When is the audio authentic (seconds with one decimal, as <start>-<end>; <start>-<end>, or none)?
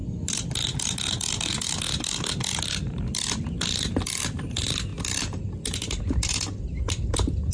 0.0-7.5